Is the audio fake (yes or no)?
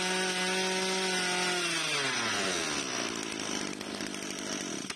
no